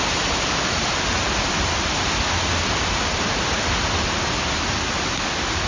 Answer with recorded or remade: recorded